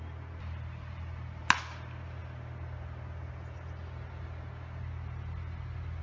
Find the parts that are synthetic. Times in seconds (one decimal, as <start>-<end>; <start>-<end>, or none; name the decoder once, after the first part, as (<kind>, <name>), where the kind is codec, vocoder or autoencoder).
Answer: none